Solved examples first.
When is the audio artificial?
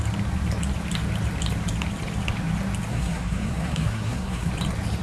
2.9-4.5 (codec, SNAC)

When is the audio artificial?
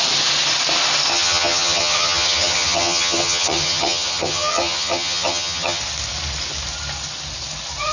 1.1-5.8 (vocoder, HiFi-GAN)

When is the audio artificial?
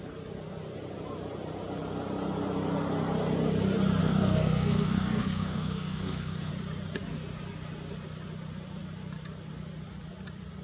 4.0-6.5 (codec, SNAC)